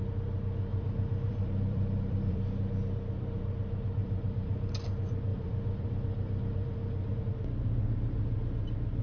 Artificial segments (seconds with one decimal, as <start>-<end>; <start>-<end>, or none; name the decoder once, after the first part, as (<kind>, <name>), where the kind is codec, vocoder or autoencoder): 0.7-2.4 (vocoder, BigVGAN v2); 4.0-4.7; 5.3-7.2